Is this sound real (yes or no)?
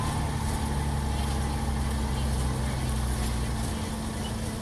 yes